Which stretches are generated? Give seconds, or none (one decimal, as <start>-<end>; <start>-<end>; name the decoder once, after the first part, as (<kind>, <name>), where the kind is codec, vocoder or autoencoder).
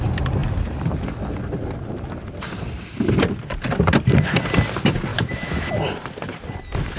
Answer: 5.1-5.7 (autoencoder, DAC-VAE)